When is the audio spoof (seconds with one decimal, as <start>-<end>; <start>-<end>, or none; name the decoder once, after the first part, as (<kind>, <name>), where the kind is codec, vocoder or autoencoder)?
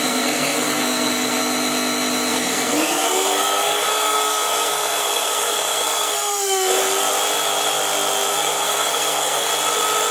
0.0-1.4 (codec, SNAC); 2.3-6.8; 8.3-9.5